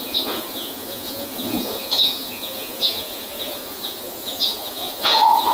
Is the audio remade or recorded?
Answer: remade